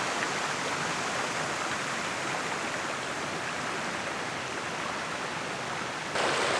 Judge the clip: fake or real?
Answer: real